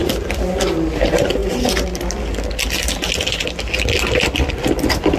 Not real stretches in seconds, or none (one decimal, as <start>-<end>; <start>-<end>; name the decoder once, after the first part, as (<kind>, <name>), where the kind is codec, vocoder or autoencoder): none